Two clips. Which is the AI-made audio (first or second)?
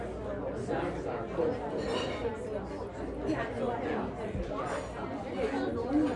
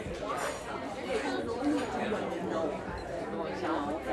second